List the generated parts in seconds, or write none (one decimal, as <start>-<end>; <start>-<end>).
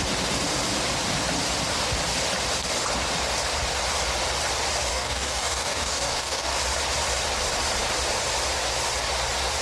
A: 4.9-6.5